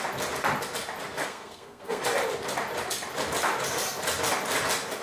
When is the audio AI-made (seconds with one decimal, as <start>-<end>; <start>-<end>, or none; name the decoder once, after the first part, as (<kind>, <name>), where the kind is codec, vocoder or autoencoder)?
1.2-2.0 (codec, SNAC)